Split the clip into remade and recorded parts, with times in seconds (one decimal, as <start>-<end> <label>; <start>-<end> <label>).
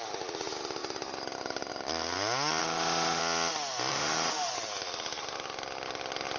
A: 0.0-2.6 recorded; 2.6-3.2 remade; 3.2-3.9 recorded; 3.9-4.5 remade; 4.5-6.4 recorded